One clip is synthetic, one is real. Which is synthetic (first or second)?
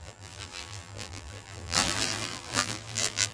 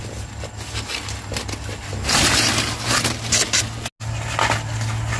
first